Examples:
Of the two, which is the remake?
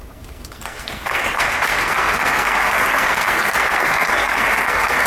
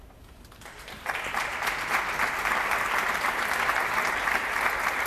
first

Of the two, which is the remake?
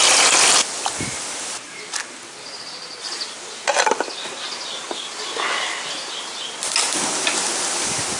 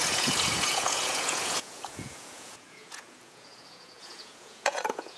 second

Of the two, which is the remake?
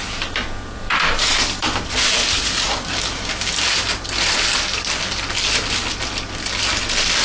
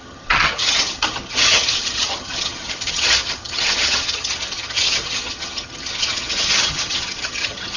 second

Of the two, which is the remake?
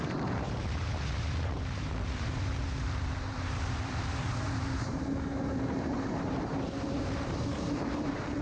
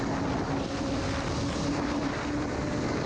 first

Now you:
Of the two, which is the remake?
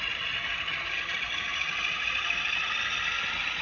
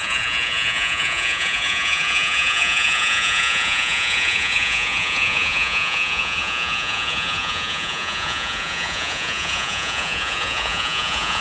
second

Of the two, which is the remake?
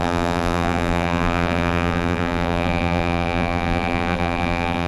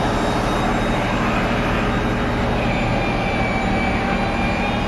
first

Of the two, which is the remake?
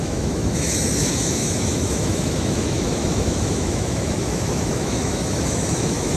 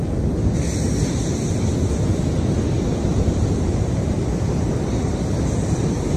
first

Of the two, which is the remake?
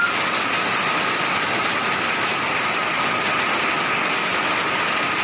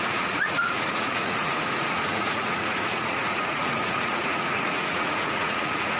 second